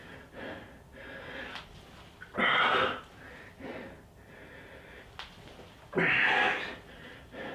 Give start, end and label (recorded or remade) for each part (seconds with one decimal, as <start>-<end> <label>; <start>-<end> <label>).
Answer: 0.0-7.5 recorded